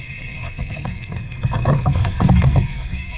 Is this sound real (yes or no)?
no